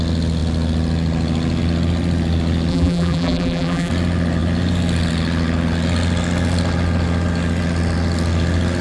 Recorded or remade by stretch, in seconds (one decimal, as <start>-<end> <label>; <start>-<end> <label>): 0.0-2.7 recorded; 2.7-3.9 remade; 3.9-8.8 recorded